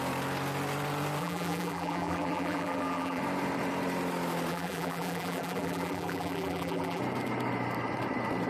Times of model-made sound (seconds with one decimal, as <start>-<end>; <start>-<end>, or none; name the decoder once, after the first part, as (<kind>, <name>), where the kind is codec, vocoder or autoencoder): 1.2-3.2 (vocoder, BigVGAN v2); 4.5-7.0